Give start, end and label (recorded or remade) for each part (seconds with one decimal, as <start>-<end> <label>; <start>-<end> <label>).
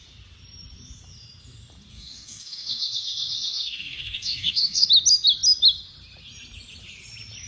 0.0-1.9 recorded; 1.9-4.9 remade; 4.9-7.5 recorded